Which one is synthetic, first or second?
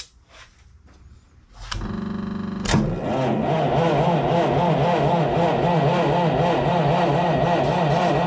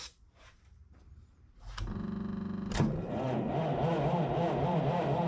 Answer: second